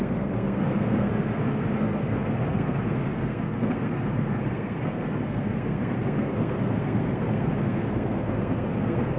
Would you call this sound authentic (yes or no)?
no